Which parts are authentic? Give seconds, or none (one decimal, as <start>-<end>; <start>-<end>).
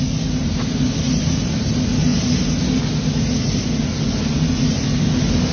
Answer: 0.0-5.5